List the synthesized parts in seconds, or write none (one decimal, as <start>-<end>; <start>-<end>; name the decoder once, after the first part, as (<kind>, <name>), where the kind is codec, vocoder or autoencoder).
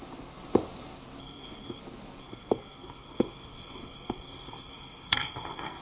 1.2-1.8 (codec, SNAC); 2.2-5.8